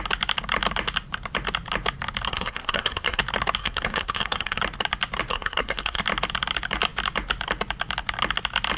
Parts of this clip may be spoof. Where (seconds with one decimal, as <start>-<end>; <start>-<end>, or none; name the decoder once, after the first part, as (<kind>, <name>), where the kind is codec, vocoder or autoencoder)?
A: 2.3-3.2 (codec, SNAC); 3.6-4.6; 5.3-6.0